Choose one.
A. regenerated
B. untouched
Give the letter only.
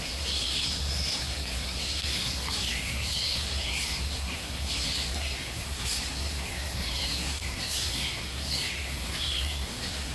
A